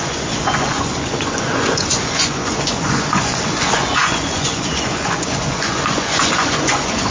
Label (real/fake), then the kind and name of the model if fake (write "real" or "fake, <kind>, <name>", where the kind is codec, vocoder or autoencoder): fake, vocoder, Vocos